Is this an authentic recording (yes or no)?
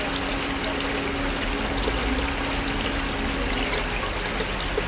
yes